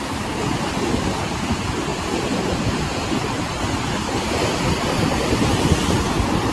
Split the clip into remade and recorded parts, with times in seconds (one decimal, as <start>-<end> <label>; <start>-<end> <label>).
0.0-1.9 recorded; 1.9-3.2 remade; 3.2-6.5 recorded